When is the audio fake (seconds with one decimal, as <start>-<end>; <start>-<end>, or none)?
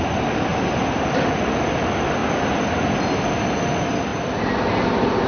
none